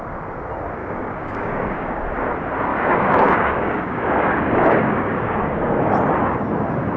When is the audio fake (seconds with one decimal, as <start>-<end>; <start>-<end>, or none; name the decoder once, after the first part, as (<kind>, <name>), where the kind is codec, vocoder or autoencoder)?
0.8-2.0 (codec, DAC); 2.7-6.0